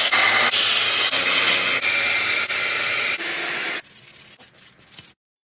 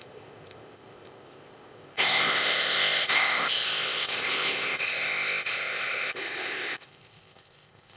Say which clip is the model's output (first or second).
second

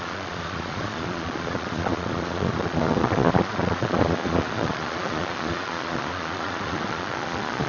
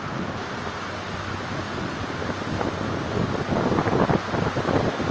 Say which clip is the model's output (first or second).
first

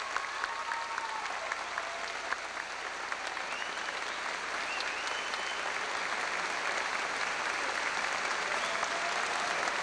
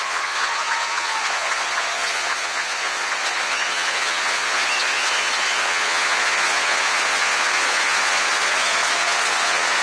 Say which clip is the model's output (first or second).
second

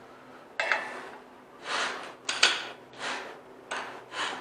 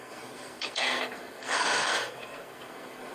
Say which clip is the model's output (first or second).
second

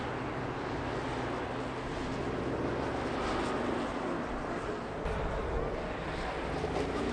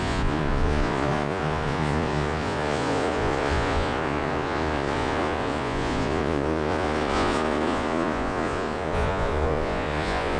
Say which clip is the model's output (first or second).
second